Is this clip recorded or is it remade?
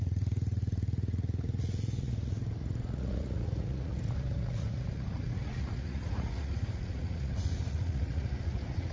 remade